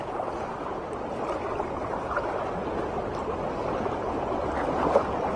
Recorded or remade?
recorded